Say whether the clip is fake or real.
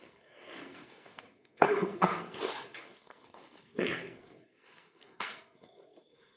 fake